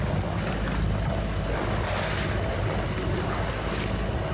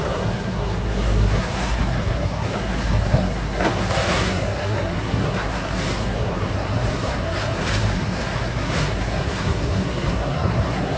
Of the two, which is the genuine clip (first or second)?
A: first